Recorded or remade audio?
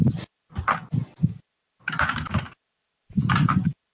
recorded